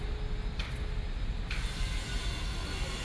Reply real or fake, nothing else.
real